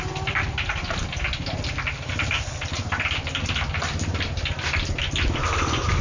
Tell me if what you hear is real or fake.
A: real